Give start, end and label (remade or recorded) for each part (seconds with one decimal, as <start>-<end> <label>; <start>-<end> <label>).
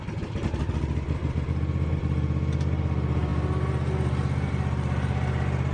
0.0-5.7 recorded